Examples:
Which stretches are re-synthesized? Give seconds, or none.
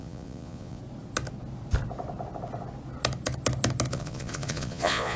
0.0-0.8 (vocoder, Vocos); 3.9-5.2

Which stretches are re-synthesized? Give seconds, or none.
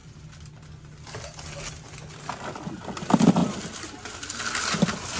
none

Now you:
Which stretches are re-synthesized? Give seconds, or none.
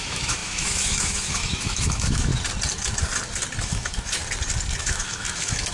0.0-2.3 (autoencoder, DAC-VAE); 3.6-4.2; 4.8-5.7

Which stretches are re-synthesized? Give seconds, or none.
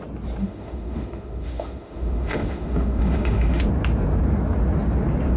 0.4-3.6 (autoencoder, DAC-VAE)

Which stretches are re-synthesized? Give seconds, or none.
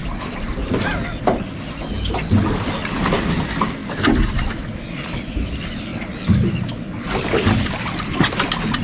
none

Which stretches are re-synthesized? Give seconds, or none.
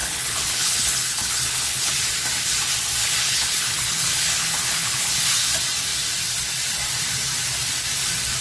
0.0-2.0 (codec, HILCodec); 3.0-5.2